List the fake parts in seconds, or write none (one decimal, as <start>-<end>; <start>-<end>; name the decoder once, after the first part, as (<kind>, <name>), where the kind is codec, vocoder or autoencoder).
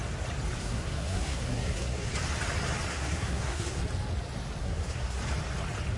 0.6-2.1 (codec, SNAC); 2.9-3.8; 4.6-5.2